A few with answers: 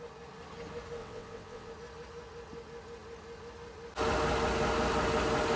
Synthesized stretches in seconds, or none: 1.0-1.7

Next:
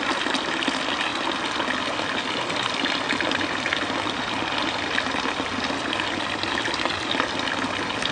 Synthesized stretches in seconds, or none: none

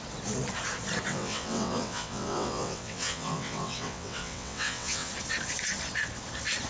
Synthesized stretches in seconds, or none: 1.1-5.1

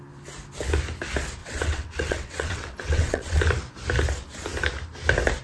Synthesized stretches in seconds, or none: 1.4-3.4

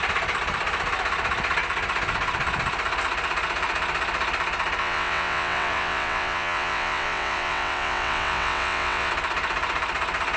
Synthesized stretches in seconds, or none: 4.8-9.1